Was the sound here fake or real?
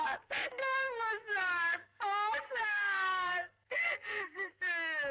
fake